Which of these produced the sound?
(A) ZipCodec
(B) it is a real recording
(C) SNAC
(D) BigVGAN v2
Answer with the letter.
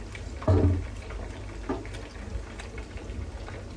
D